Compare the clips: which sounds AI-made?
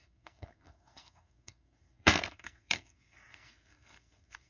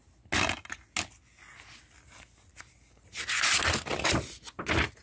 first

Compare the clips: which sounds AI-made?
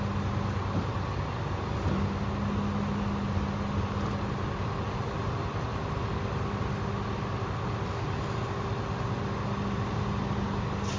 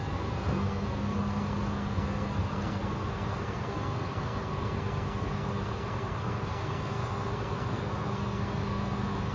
second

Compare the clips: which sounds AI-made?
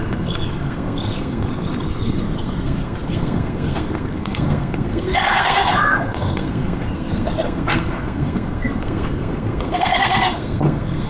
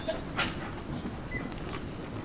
first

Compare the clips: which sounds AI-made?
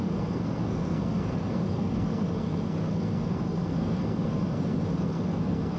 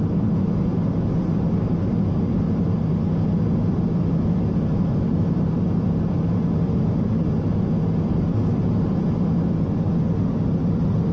first